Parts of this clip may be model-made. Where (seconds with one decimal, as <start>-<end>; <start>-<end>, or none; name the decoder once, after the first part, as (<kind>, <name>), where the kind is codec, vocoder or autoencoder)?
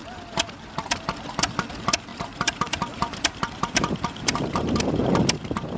2.1-4.8 (vocoder, BigVGAN v2)